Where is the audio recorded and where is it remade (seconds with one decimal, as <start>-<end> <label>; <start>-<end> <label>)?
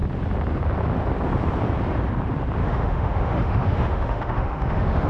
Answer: 0.0-2.6 recorded; 2.6-5.1 remade